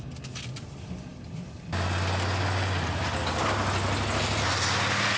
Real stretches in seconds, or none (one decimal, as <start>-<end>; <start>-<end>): 0.0-5.2